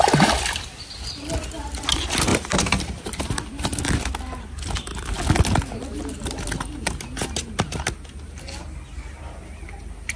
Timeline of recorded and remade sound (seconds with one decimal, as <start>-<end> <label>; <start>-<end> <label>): 0.0-2.3 recorded; 2.3-2.9 remade; 2.9-10.2 recorded